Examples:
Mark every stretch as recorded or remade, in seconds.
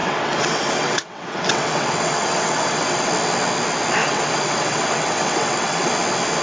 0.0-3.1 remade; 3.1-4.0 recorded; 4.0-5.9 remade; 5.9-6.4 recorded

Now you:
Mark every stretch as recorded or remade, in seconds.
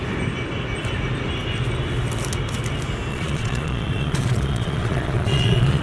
0.0-3.1 recorded; 3.1-5.8 remade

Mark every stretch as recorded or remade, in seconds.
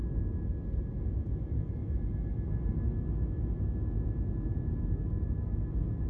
0.0-6.1 recorded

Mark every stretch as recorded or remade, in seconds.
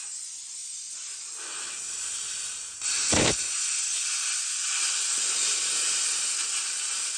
0.0-7.2 recorded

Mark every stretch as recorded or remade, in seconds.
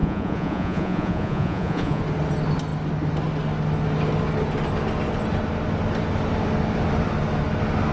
0.0-2.0 remade; 2.0-7.9 recorded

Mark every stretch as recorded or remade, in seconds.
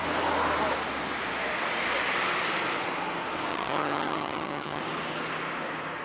0.0-3.5 recorded; 3.5-4.8 remade; 4.8-6.0 recorded